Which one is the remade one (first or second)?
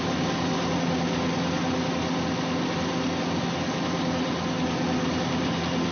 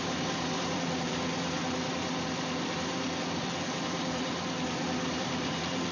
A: second